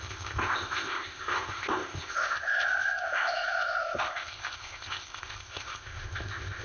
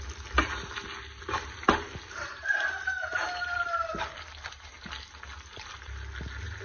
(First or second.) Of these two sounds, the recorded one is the second